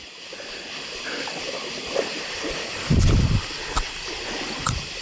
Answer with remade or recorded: recorded